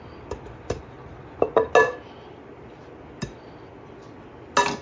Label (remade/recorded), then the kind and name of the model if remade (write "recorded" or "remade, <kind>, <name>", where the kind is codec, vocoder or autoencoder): recorded